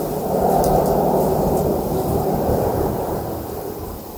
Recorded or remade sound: remade